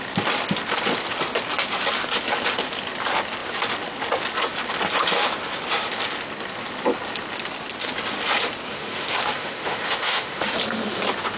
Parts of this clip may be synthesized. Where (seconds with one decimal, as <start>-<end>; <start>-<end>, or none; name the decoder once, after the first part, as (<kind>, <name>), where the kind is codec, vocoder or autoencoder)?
8.7-10.4 (autoencoder, DAC-VAE)

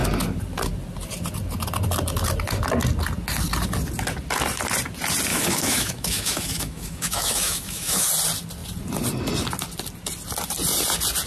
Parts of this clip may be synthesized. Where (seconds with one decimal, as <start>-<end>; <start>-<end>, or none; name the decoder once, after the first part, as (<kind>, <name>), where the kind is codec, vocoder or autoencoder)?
5.3-8.1 (autoencoder, DAC-VAE)

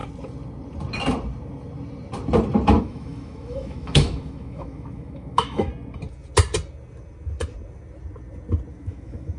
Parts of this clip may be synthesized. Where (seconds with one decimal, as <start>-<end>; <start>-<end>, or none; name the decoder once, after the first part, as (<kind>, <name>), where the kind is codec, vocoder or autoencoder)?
2.8-5.7 (autoencoder, DAC-VAE); 8.7-9.4

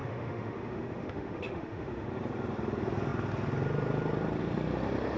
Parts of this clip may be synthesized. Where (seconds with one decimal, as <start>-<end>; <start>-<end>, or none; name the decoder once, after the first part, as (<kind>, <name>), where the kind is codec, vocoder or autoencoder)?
0.0-2.1 (autoencoder, DAC-VAE)